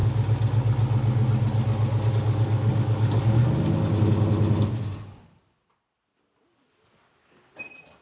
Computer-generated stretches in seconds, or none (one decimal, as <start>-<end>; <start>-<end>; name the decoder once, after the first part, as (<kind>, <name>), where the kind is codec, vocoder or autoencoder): 2.1-3.4 (codec, DAC)